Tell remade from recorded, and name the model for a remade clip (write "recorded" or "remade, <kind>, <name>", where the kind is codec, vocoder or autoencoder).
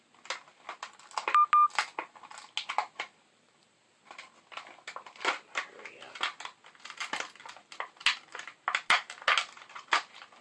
recorded